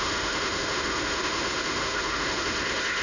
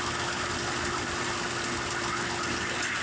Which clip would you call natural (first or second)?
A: second